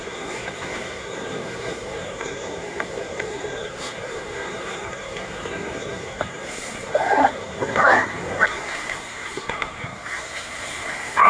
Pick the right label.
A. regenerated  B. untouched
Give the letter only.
A